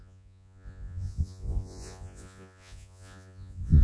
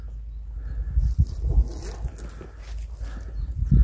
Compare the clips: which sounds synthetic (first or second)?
first